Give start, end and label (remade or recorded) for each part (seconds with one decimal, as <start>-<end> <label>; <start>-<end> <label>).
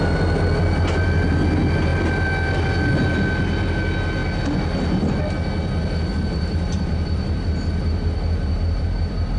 0.0-6.1 recorded; 6.1-9.4 remade